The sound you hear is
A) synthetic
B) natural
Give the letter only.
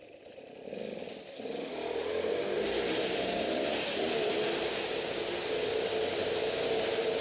B